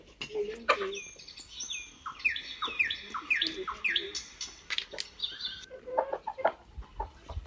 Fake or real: real